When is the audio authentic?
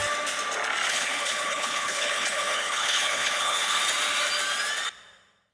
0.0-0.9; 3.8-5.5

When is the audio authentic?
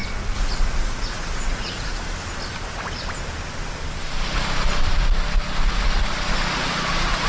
1.9-6.3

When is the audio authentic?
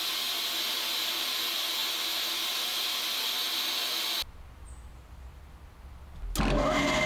0.0-7.1